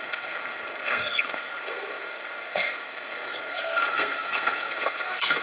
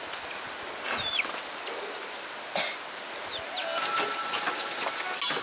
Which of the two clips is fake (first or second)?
first